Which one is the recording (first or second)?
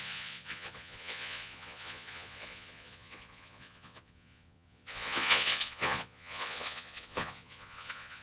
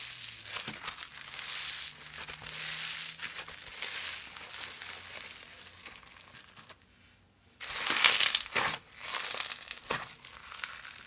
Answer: second